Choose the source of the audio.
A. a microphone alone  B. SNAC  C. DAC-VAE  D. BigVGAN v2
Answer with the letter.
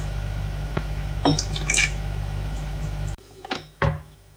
C